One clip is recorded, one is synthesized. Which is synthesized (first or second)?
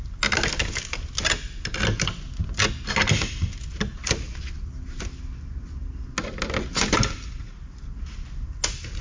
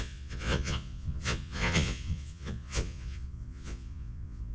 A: second